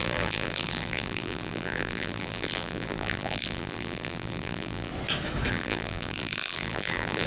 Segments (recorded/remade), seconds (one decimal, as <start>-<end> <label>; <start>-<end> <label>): 0.0-4.9 remade; 4.9-5.5 recorded; 5.5-7.3 remade